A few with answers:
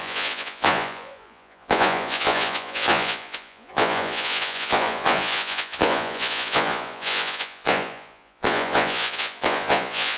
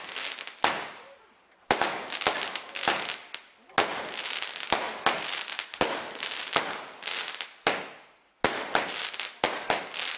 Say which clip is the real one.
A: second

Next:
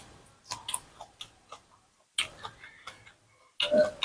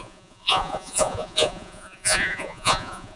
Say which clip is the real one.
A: first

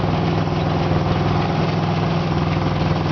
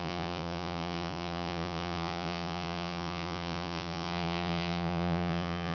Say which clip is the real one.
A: first